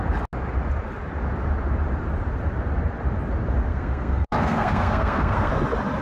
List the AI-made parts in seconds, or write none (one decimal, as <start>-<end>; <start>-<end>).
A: 3.7-5.5